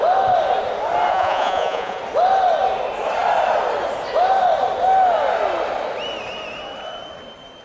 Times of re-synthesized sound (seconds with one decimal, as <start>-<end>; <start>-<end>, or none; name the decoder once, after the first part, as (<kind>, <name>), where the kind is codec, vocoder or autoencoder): 1.1-2.0 (vocoder, Vocos)